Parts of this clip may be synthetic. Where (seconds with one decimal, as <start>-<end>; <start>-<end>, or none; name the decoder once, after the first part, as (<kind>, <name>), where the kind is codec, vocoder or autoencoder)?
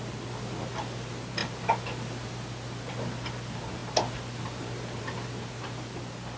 none